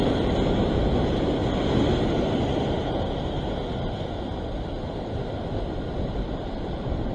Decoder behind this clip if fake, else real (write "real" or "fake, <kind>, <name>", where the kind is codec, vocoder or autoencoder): real